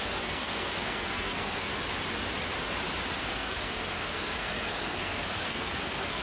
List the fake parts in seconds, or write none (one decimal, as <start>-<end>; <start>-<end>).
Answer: 0.0-1.7; 3.2-6.2